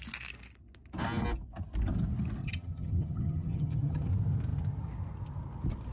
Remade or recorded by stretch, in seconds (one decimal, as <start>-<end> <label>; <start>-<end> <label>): 0.0-2.4 recorded; 2.4-4.1 remade; 4.1-5.9 recorded

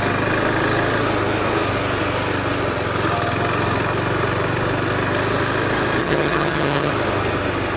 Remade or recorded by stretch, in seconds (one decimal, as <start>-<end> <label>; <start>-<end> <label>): 0.0-6.0 recorded; 6.0-6.9 remade; 6.9-7.8 recorded

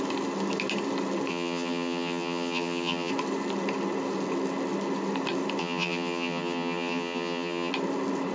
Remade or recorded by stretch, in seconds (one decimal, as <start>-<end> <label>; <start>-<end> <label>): 0.0-1.3 recorded; 1.3-3.1 remade; 3.1-5.6 recorded; 5.6-7.7 remade; 7.7-8.3 recorded

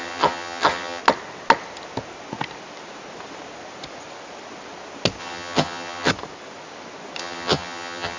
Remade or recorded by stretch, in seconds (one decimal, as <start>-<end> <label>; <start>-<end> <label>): 0.0-1.0 remade; 1.0-5.2 recorded; 5.2-6.1 remade; 6.1-7.2 recorded; 7.2-8.2 remade

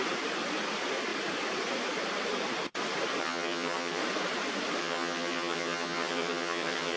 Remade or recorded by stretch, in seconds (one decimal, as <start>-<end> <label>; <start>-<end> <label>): 0.0-3.2 recorded; 3.2-4.0 remade; 4.0-4.8 recorded; 4.8-7.0 remade

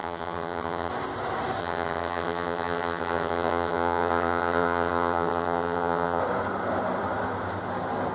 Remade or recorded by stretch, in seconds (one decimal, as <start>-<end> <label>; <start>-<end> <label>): 0.0-0.9 remade; 0.9-1.6 recorded; 1.6-6.2 remade; 6.2-8.1 recorded